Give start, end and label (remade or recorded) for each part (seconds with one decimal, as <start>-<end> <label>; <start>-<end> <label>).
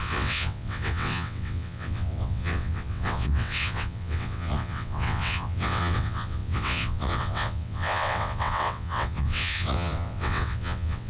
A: 0.0-11.1 remade